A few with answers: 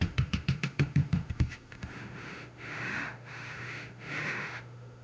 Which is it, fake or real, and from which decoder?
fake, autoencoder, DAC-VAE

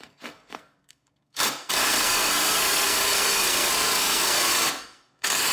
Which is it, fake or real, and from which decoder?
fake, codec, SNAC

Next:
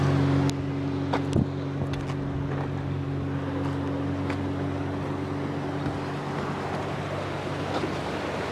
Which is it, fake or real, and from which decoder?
real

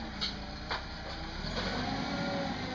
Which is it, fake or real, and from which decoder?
real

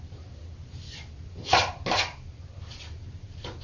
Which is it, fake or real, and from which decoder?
real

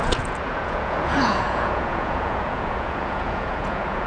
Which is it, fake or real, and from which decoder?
fake, vocoder, Vocos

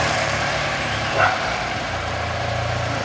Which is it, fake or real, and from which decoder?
fake, vocoder, BigVGAN v2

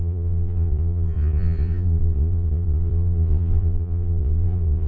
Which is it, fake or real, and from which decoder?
fake, vocoder, Vocos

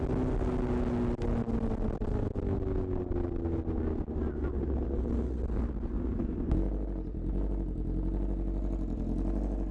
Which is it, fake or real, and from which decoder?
real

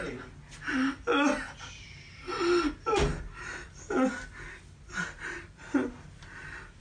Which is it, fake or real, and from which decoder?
real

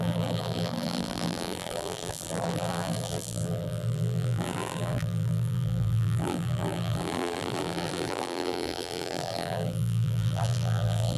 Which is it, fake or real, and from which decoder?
fake, vocoder, BigVGAN v2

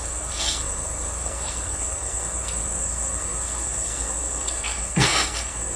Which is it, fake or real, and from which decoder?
fake, codec, SNAC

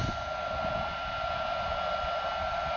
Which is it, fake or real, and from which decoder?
real